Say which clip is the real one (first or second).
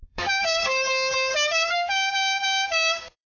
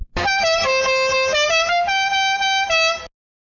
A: second